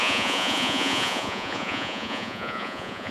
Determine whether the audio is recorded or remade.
remade